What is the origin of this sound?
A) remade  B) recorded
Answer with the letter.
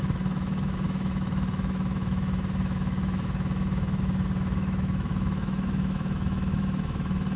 A